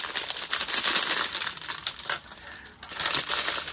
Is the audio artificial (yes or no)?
no